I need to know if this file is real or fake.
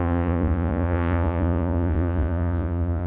fake